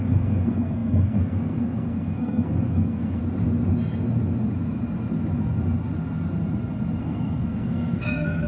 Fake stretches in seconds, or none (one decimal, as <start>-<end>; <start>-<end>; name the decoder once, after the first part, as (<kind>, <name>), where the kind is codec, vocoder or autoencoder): 0.0-3.2 (codec, SNAC); 7.0-8.5

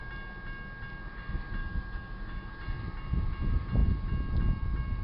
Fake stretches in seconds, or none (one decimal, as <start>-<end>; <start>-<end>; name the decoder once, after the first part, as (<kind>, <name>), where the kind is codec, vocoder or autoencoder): 1.6-2.6 (autoencoder, DAC-VAE)